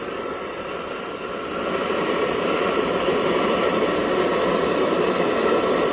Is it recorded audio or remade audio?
recorded